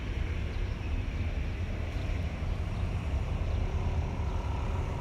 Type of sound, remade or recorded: recorded